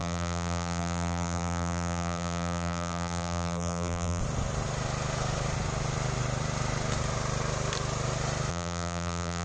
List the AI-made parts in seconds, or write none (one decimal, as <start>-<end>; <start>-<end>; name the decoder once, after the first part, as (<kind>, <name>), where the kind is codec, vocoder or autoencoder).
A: 0.0-4.2 (vocoder, BigVGAN v2); 8.5-9.4